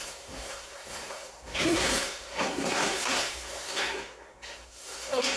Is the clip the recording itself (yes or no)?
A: no